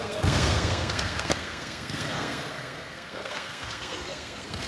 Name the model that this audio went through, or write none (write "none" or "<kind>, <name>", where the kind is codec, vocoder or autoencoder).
codec, SNAC